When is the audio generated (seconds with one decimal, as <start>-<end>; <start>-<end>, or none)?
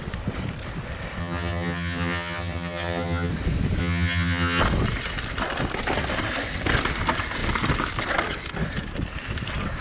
1.2-3.3; 3.8-4.6